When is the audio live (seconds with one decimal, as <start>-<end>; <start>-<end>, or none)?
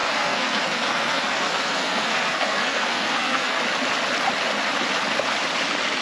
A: 3.6-6.0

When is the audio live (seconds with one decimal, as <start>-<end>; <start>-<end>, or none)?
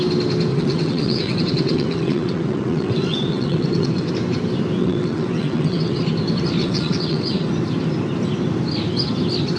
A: 0.0-0.5; 4.1-4.8; 6.0-6.6; 7.5-9.6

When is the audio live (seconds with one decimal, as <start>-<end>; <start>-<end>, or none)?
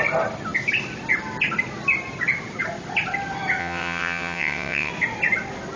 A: 0.0-3.6; 4.9-5.8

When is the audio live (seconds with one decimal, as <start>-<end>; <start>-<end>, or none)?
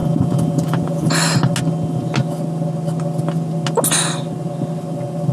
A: 1.1-5.3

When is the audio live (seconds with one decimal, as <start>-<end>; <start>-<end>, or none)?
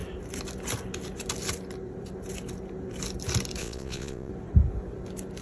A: 0.0-3.6; 4.3-5.4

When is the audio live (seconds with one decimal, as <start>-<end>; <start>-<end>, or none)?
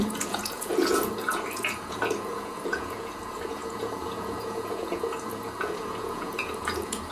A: none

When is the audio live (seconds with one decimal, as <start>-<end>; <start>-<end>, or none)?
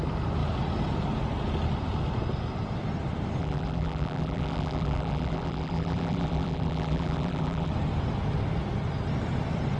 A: 0.0-3.4; 7.7-9.8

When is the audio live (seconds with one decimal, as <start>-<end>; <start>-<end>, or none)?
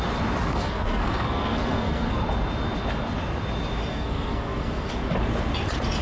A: 0.0-0.5; 2.2-3.9; 4.9-6.0